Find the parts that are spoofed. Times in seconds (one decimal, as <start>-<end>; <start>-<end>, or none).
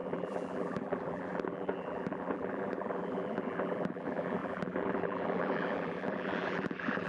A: 0.0-7.1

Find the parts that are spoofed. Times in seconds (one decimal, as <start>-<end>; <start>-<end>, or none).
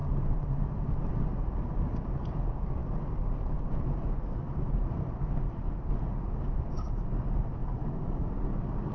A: 0.0-1.1; 7.6-8.3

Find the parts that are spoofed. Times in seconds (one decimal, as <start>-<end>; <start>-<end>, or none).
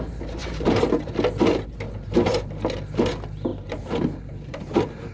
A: 0.4-1.1; 3.5-4.6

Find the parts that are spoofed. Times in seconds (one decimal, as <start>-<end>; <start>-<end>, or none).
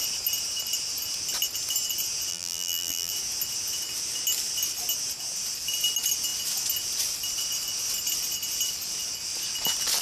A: 2.3-3.1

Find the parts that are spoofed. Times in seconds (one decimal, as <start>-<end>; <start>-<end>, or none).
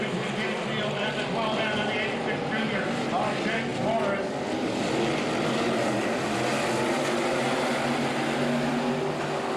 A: none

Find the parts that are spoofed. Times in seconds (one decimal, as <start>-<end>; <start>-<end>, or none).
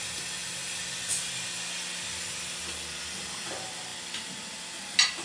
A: none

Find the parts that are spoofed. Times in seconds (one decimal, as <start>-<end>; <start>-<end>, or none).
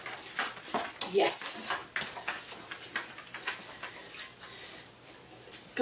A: 0.0-1.8; 2.7-3.6; 4.6-5.8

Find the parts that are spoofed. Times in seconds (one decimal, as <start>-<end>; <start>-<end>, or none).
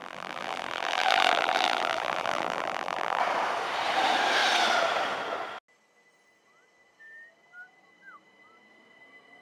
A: 0.0-3.2